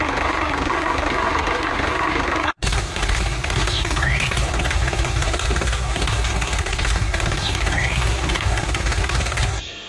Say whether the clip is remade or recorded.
remade